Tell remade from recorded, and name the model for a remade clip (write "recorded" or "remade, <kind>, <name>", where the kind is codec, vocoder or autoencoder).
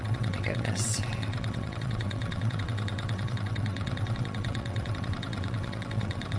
remade, vocoder, WaveNeXt